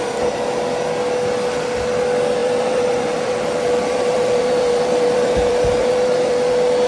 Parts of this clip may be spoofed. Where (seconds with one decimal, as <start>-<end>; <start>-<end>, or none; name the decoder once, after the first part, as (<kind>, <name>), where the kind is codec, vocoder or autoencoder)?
2.4-6.5 (vocoder, BigVGAN v2)